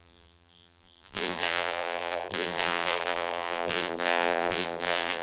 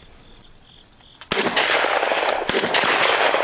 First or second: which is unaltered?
second